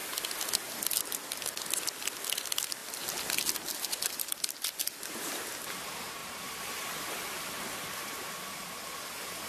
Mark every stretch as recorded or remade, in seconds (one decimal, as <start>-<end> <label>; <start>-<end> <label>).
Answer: 0.0-9.5 recorded